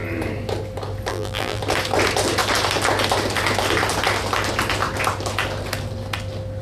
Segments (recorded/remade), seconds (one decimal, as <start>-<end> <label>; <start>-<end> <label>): 0.0-1.1 recorded; 1.1-1.6 remade; 1.6-6.6 recorded